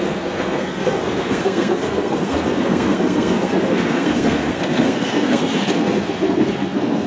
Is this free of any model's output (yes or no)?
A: no